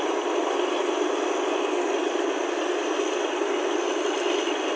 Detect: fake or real real